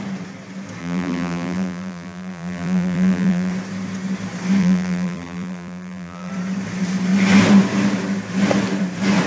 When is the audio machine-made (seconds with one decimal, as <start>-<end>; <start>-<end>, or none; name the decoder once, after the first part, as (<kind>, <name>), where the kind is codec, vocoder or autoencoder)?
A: 0.8-3.5 (vocoder, BigVGAN v2); 4.6-6.3